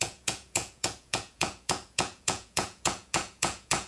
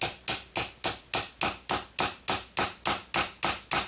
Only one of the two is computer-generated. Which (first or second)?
first